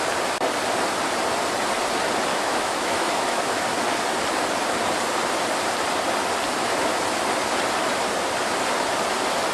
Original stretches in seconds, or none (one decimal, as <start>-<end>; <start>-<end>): 0.0-2.3; 3.6-9.5